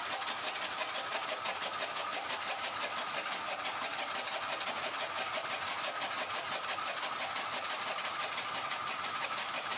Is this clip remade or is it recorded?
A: recorded